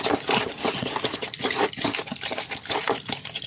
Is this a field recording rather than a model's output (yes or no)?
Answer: yes